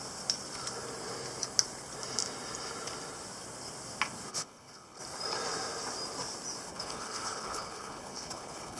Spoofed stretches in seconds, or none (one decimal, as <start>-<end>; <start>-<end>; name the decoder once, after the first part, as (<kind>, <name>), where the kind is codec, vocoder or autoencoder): 4.3-5.0 (codec, HILCodec); 6.7-8.8